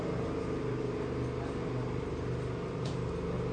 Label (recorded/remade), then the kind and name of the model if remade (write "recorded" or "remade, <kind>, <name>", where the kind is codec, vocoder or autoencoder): recorded